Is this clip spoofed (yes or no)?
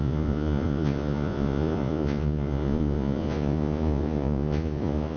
yes